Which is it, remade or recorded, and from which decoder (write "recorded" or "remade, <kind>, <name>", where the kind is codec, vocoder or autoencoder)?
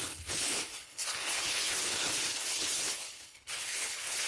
remade, codec, HILCodec